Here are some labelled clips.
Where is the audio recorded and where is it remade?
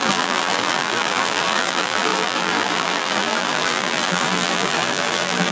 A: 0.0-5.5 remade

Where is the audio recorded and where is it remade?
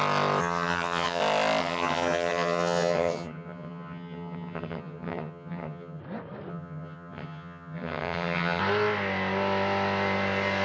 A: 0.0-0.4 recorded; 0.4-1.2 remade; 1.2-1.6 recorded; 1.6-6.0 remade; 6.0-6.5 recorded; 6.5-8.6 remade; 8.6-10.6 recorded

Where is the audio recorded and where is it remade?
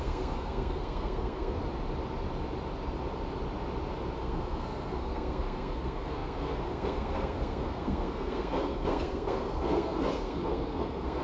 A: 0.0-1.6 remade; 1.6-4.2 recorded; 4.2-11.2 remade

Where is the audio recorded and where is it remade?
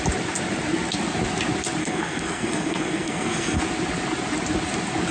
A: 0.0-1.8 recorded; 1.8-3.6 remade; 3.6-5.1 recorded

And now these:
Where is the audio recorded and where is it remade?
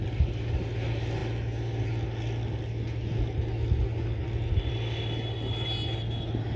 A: 0.0-6.6 recorded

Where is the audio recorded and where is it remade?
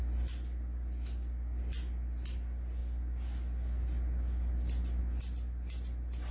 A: 0.0-6.3 recorded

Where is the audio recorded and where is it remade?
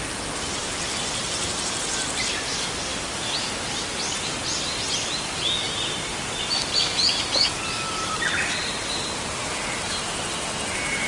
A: 0.0-11.1 recorded